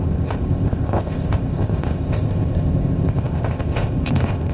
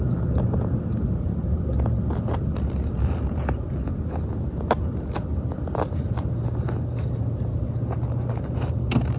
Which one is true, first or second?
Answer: second